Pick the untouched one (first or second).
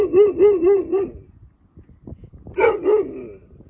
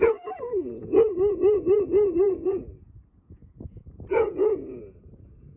first